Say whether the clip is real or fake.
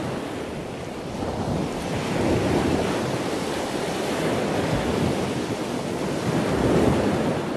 real